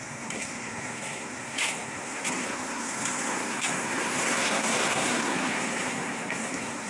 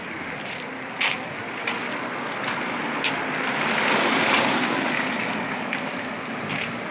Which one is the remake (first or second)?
first